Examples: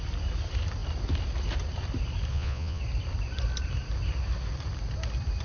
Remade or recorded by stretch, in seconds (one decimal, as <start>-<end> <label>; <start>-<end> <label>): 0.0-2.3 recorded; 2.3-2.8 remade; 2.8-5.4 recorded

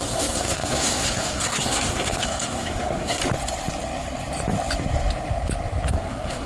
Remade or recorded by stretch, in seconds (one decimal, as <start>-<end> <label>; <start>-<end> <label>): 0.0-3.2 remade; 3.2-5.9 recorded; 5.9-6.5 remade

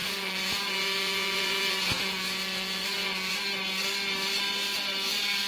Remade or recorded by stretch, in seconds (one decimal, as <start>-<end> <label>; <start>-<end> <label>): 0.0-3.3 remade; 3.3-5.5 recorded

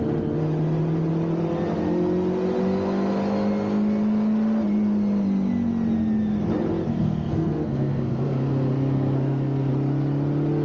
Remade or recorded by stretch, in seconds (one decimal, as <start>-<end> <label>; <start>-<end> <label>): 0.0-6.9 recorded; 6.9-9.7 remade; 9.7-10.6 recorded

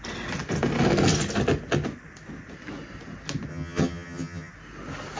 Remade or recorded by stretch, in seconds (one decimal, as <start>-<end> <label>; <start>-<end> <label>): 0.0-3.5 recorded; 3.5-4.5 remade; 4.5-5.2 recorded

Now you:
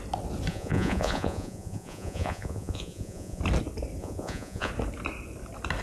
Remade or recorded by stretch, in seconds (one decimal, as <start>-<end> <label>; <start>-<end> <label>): 0.0-0.5 recorded; 0.5-3.4 remade; 3.4-4.0 recorded; 4.0-4.7 remade; 4.7-5.8 recorded

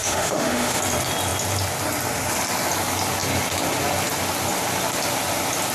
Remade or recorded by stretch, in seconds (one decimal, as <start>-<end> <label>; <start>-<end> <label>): 0.0-0.8 remade; 0.8-5.7 recorded

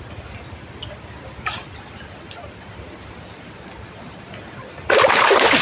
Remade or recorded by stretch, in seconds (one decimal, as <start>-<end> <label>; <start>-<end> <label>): 0.0-5.6 remade